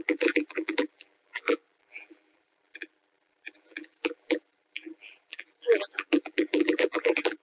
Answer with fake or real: fake